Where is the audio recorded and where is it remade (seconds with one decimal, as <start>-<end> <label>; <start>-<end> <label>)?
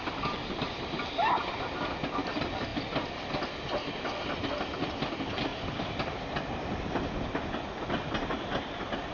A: 0.0-5.5 recorded; 5.5-6.1 remade; 6.1-9.1 recorded